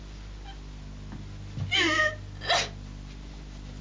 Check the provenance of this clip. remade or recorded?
recorded